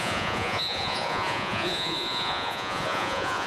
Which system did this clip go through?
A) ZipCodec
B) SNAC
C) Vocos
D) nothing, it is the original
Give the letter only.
C